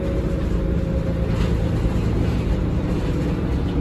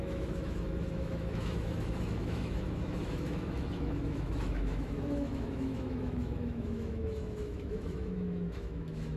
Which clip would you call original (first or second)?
first